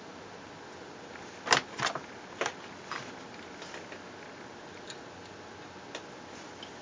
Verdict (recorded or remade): recorded